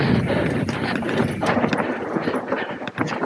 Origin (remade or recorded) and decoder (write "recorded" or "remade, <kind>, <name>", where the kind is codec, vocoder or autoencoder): recorded